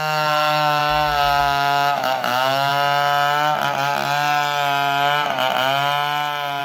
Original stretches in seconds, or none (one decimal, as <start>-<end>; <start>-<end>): 0.8-1.4; 2.7-6.6